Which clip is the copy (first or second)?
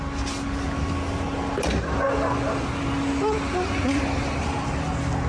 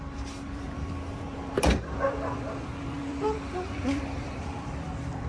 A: second